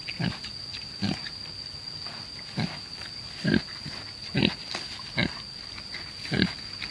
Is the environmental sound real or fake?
real